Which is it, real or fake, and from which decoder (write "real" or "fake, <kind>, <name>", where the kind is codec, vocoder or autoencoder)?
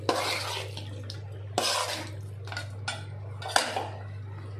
real